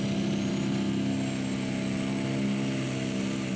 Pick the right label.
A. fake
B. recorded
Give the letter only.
B